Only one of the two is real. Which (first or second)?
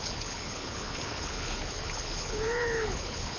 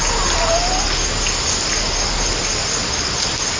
second